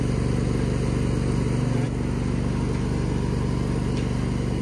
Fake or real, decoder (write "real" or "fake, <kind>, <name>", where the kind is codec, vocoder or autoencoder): real